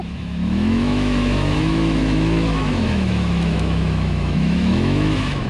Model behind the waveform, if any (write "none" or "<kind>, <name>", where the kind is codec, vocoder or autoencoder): autoencoder, DAC-VAE